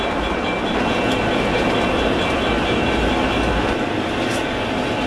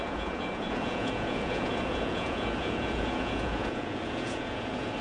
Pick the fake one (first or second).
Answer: second